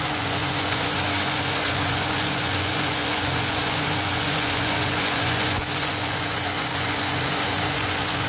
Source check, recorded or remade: remade